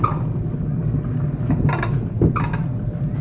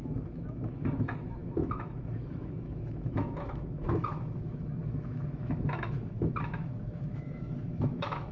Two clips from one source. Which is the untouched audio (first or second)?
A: first